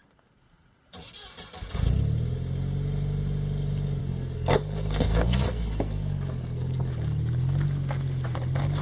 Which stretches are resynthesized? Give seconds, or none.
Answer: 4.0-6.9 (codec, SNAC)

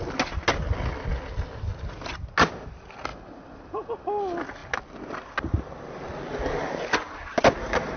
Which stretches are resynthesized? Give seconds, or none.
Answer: none

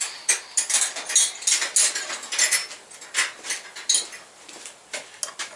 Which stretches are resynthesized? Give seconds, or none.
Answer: none

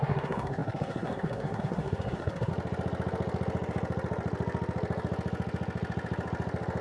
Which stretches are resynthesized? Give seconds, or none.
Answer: 0.0-2.5 (codec, SNAC)

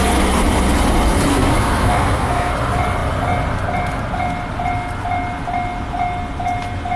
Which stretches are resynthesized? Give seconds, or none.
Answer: 1.3-2.5 (codec, SNAC)

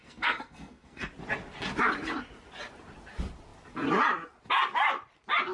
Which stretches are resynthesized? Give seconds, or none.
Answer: 0.0-1.1 (codec, SNAC)